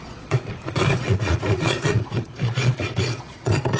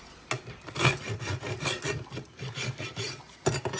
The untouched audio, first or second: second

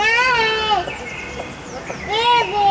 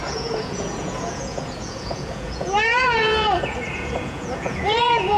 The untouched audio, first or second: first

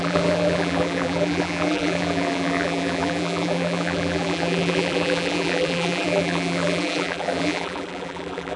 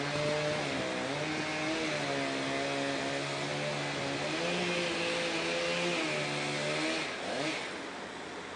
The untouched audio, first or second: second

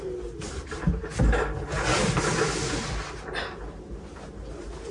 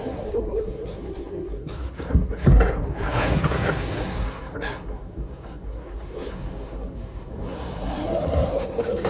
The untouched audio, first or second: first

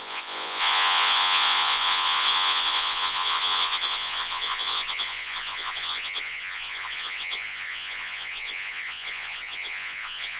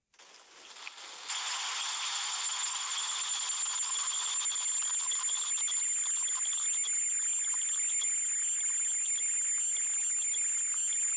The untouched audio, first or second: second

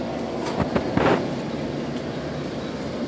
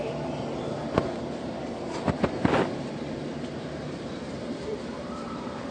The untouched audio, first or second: first